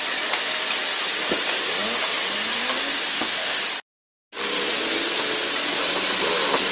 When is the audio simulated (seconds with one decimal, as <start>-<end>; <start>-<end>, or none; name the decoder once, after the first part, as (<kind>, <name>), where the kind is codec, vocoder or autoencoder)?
3.1-3.6 (codec, ZipCodec)